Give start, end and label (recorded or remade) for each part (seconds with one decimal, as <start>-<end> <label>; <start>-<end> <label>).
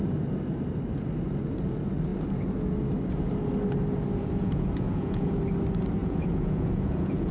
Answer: 0.0-4.4 recorded; 4.4-5.4 remade; 5.4-6.0 recorded; 6.0-7.3 remade